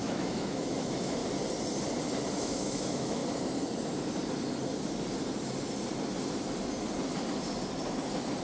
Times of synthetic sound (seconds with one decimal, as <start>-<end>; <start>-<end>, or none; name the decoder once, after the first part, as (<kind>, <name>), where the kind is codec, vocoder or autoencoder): 0.0-1.2 (autoencoder, DAC-VAE); 2.4-3.2